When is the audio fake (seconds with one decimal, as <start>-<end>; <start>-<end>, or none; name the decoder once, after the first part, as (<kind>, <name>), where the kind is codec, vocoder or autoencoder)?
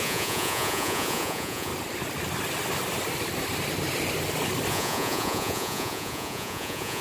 0.0-1.7 (vocoder, Vocos); 4.7-7.0